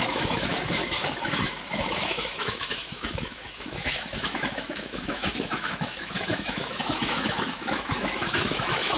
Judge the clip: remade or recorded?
remade